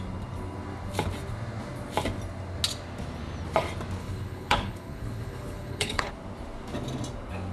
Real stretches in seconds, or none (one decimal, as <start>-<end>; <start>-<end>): 0.0-4.0; 6.1-7.5